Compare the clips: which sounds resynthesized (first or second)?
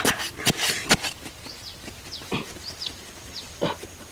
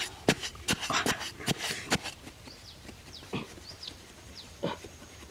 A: second